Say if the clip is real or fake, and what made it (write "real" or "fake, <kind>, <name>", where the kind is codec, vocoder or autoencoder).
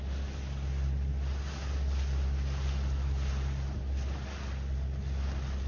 real